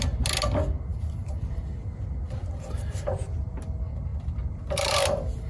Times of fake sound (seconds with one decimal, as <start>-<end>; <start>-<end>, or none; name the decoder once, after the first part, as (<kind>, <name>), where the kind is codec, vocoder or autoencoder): 0.9-1.7 (vocoder, BigVGAN v2); 2.4-3.2; 4.1-5.5